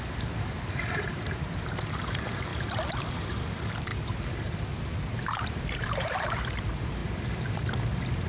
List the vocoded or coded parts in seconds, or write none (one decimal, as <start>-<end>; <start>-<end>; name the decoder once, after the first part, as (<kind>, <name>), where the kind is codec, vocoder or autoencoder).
0.0-2.5 (vocoder, BigVGAN v2); 3.1-3.9; 5.6-8.3